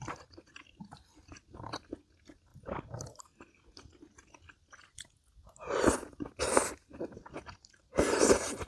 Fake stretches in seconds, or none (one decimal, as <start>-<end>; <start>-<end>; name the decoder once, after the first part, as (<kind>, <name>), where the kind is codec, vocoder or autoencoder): none